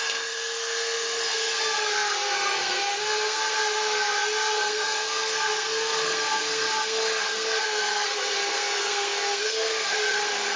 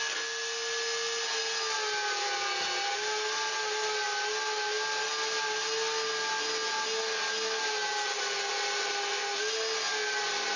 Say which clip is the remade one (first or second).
first